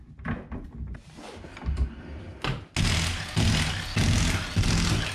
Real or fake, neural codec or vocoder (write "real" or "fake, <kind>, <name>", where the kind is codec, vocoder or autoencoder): real